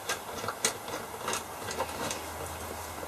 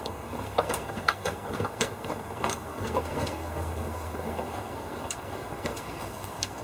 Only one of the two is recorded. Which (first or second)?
first